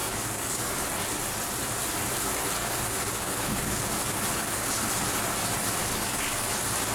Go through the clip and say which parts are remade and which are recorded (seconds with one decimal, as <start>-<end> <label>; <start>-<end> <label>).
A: 0.0-0.6 remade; 0.6-2.6 recorded; 2.6-4.7 remade; 4.7-5.8 recorded; 5.8-6.5 remade; 6.5-6.9 recorded